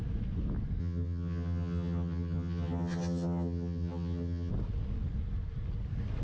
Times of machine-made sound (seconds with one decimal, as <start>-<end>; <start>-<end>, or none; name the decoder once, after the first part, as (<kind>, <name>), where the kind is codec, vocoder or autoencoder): 0.8-4.5 (vocoder, HiFi-GAN)